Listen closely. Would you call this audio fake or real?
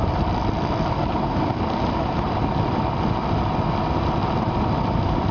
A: real